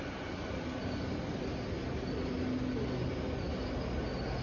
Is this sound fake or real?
real